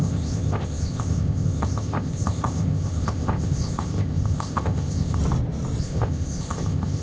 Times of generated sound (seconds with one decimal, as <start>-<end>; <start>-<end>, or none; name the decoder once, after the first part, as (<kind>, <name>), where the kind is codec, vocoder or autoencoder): 0.0-5.2 (codec, ZipCodec); 5.8-7.0